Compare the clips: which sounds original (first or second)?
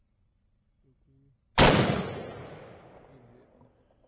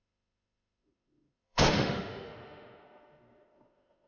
first